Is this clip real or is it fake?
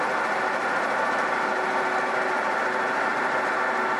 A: real